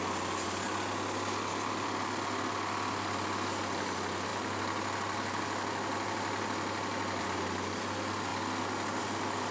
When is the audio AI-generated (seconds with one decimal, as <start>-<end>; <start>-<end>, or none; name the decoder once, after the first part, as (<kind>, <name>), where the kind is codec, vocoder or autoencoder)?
none